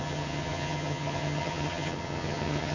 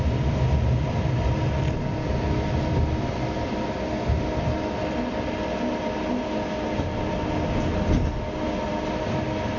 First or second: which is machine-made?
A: first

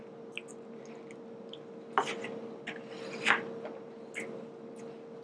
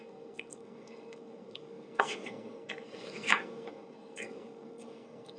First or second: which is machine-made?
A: second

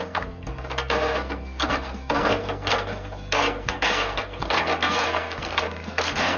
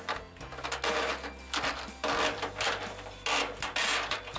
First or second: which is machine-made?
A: first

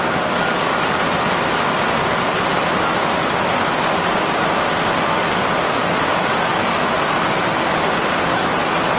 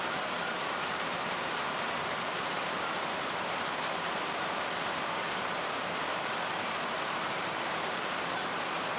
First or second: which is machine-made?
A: second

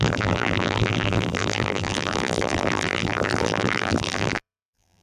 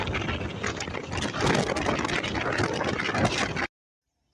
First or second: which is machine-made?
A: first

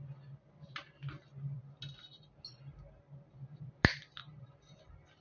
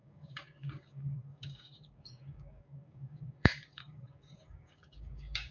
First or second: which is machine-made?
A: second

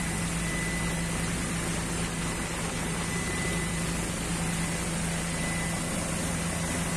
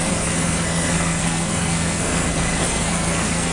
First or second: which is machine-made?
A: second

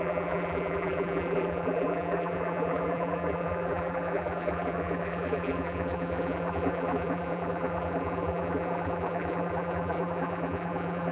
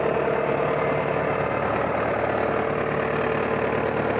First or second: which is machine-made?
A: first